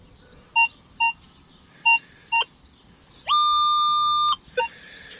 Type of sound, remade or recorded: recorded